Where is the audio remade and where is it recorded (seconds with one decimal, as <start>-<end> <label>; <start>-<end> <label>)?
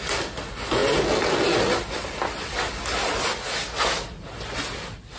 0.0-5.2 recorded